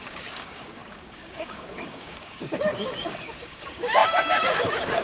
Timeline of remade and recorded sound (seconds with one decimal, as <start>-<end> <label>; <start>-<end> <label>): 0.0-5.0 remade